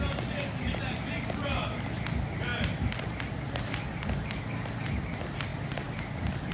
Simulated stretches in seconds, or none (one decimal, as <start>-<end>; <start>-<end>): none